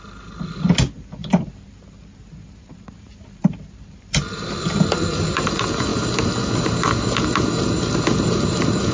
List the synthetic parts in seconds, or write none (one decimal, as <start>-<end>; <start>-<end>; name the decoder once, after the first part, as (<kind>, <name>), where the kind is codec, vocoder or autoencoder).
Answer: 1.2-5.5 (vocoder, BigVGAN v2)